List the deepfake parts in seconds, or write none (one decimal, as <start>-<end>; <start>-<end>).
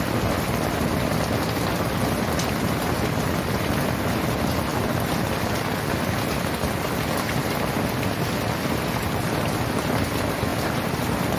none